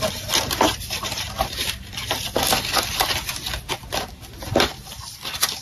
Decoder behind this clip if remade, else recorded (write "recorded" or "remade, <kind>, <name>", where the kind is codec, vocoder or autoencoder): remade, vocoder, BigVGAN v2